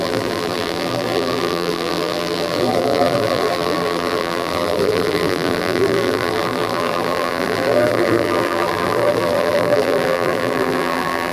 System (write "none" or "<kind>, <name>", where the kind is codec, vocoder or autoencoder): vocoder, BigVGAN v2